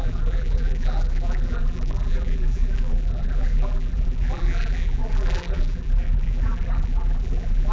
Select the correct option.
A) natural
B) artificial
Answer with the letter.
B